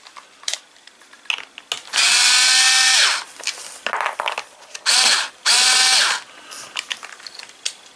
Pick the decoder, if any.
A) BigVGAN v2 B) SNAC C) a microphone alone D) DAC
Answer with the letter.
C